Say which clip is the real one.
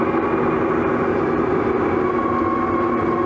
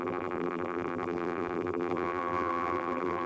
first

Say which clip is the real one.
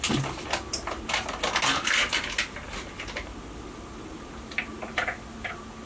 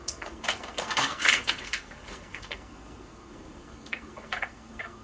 first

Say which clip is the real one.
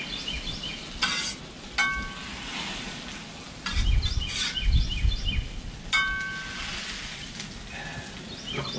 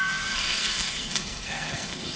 first